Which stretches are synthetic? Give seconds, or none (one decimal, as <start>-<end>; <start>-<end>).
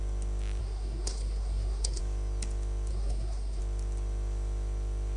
0.6-2.0; 2.9-3.6